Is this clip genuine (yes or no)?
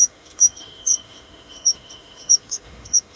no